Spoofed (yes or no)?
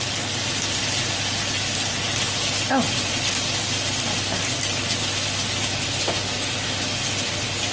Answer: no